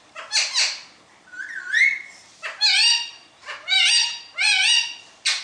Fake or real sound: real